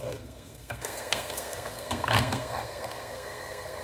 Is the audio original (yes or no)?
no